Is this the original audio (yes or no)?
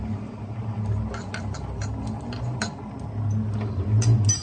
yes